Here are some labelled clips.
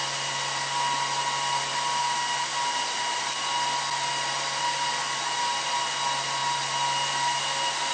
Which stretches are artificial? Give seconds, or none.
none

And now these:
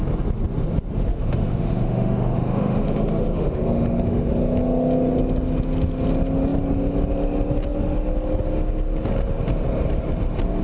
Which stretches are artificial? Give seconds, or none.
1.1-4.3 (autoencoder, DAC-VAE)

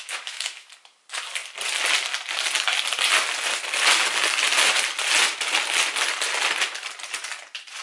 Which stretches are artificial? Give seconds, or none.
0.0-0.7 (autoencoder, DAC-VAE)

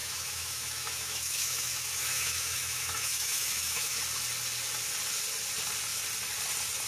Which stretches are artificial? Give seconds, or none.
0.0-4.0 (autoencoder, DAC-VAE)

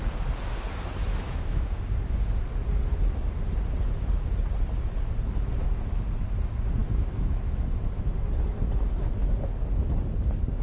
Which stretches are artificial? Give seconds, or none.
1.0-1.8 (autoencoder, DAC-VAE); 6.8-7.7

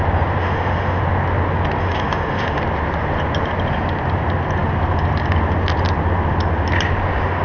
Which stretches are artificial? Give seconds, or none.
0.4-1.0 (autoencoder, DAC-VAE); 1.8-2.6